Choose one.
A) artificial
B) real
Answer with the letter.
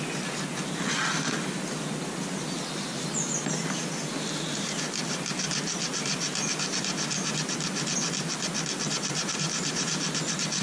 B